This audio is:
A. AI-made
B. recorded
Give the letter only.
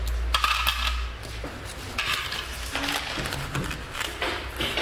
B